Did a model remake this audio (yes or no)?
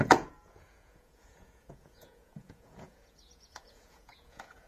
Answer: yes